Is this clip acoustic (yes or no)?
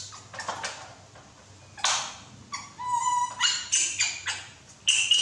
yes